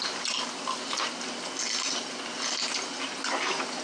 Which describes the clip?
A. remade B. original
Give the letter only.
B